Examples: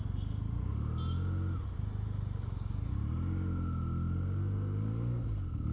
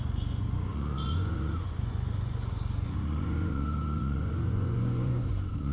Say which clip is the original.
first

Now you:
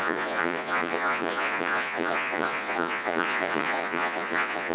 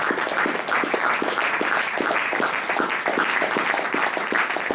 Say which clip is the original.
second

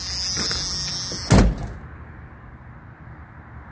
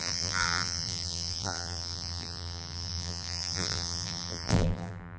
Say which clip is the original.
first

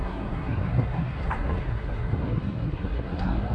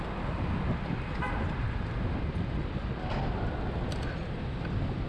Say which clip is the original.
second